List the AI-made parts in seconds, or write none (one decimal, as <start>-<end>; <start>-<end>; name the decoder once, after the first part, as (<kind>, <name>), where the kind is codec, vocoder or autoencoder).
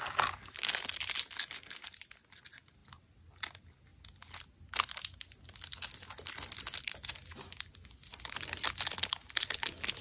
none